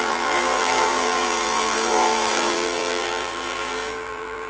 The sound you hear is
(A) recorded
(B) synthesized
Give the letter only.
B